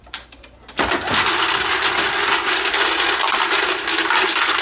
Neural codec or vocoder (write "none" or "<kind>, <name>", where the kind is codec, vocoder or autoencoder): none